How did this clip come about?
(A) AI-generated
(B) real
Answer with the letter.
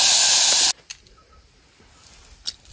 B